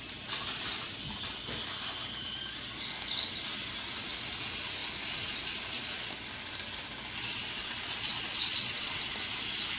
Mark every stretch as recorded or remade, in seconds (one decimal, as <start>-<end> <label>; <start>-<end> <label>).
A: 0.0-7.6 recorded; 7.6-9.0 remade; 9.0-9.8 recorded